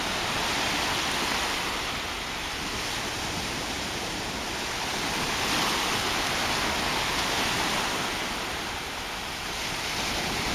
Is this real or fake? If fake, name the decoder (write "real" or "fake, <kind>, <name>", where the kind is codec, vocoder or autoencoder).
real